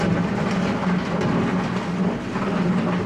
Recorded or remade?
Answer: remade